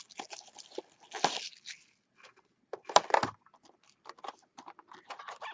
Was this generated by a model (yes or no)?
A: no